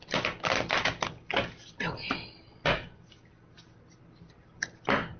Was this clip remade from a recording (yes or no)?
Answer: no